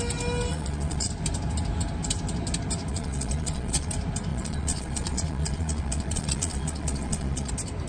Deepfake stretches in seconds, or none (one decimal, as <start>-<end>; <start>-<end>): 0.5-1.1; 2.9-3.9; 4.3-7.5